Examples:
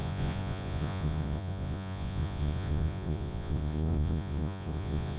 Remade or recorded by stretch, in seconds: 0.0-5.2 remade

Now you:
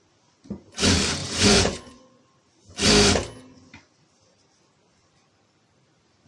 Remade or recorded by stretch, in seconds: 0.0-1.2 recorded; 1.2-2.2 remade; 2.2-6.3 recorded

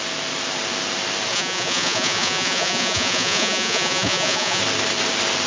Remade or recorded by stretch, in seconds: 0.0-1.3 recorded; 1.3-4.6 remade; 4.6-5.5 recorded

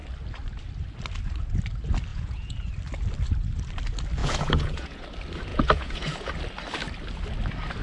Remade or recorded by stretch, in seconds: 0.0-2.1 recorded; 2.1-2.7 remade; 2.7-4.2 recorded; 4.2-5.0 remade; 5.0-5.5 recorded; 5.5-6.3 remade; 6.3-7.8 recorded

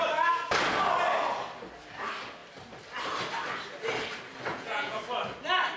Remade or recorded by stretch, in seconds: 0.0-4.5 recorded; 4.5-5.0 remade; 5.0-5.8 recorded